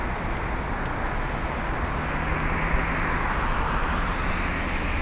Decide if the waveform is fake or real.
real